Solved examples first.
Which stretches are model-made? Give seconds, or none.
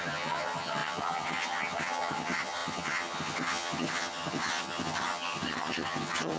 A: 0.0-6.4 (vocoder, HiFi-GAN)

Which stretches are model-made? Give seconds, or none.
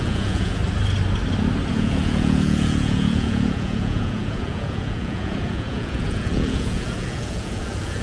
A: 0.0-0.6 (vocoder, Vocos); 1.7-8.0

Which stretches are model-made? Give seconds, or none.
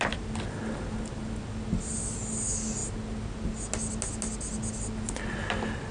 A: none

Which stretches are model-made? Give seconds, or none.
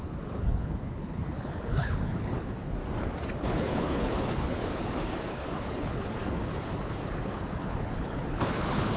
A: 0.0-2.8 (codec, HILCodec); 3.4-9.0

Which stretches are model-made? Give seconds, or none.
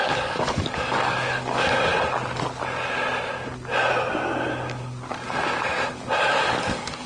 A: 0.0-1.9 (codec, DAC); 6.2-7.1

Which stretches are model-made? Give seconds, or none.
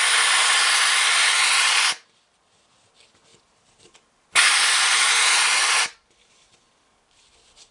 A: none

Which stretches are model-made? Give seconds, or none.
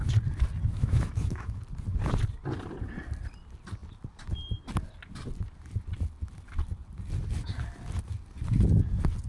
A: 0.7-1.6 (autoencoder, DAC-VAE)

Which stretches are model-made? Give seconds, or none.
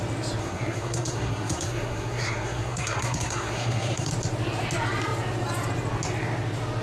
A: 0.4-4.1 (codec, SNAC)